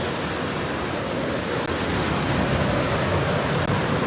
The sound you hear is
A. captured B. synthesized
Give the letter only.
A